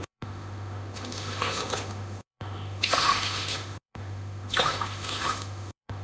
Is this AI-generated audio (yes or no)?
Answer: yes